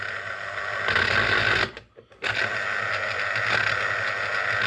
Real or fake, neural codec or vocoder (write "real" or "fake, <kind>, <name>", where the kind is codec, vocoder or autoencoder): real